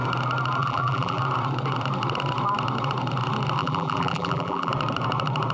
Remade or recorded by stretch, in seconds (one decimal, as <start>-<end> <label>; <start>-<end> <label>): 0.0-0.6 recorded; 0.6-1.2 remade; 1.2-3.6 recorded; 3.6-4.7 remade; 4.7-5.5 recorded